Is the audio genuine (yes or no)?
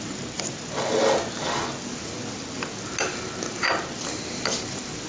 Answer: yes